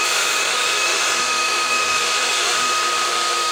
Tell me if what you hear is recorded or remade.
remade